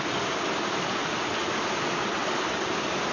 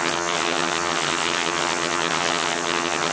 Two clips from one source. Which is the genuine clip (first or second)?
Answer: first